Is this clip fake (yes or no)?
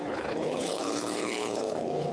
yes